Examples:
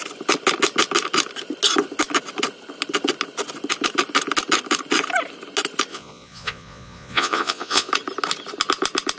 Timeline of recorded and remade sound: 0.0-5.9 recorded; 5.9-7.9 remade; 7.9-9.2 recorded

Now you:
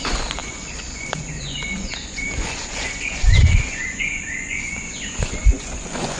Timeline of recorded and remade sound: 0.0-6.2 remade

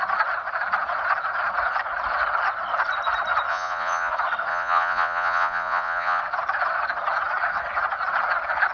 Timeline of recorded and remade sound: 0.0-3.5 recorded; 3.5-4.1 remade; 4.1-4.5 recorded; 4.5-6.2 remade; 6.2-8.7 recorded

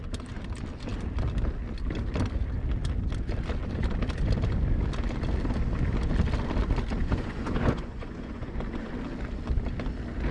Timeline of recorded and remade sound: 0.0-7.0 recorded; 7.0-8.9 remade; 8.9-10.3 recorded

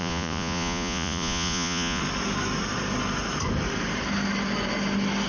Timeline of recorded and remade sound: 0.0-2.0 remade; 2.0-5.3 recorded

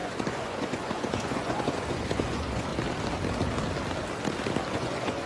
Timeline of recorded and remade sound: 0.0-2.7 remade; 2.7-4.7 recorded; 4.7-5.3 remade